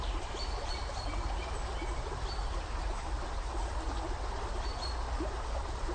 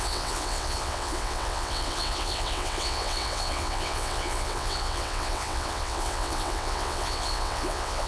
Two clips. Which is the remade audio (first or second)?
second